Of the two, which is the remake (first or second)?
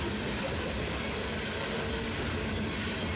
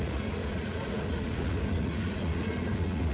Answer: second